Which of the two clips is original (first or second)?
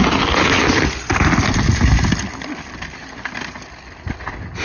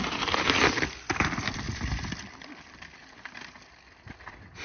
first